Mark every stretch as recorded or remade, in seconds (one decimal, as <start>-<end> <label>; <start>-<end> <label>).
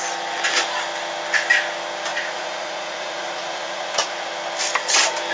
0.0-2.1 recorded; 2.1-4.3 remade; 4.3-5.3 recorded